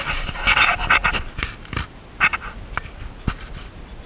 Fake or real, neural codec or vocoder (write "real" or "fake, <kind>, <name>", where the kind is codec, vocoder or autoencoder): real